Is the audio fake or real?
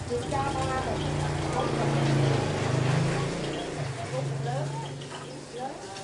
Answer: real